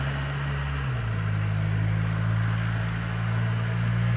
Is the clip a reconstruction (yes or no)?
no